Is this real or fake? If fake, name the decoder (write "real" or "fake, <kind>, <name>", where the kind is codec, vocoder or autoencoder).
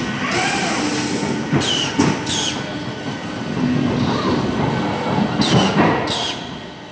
real